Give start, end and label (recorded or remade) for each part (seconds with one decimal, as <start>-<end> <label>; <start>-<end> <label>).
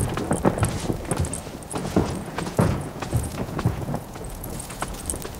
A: 0.0-1.8 recorded; 1.8-5.0 remade; 5.0-5.4 recorded